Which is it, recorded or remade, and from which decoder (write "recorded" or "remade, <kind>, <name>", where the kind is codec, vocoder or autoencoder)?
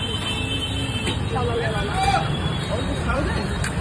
remade, vocoder, BigVGAN v2